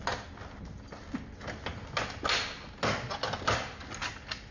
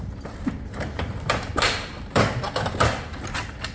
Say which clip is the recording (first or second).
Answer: first